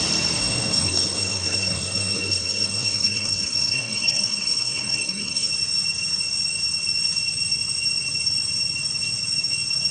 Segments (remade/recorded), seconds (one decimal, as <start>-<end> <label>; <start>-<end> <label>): 0.0-0.4 recorded; 0.4-5.5 remade; 5.5-9.9 recorded